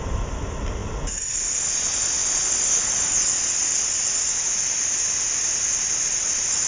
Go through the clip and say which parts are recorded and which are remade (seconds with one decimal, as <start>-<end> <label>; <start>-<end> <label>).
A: 0.0-6.7 recorded